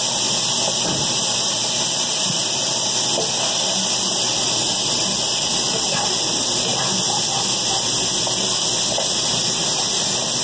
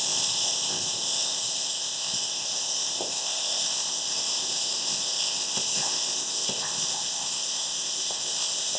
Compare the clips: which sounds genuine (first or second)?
first